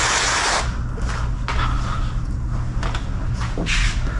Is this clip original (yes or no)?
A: yes